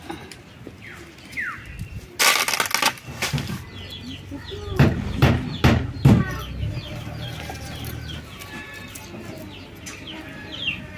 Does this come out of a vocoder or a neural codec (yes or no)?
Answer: no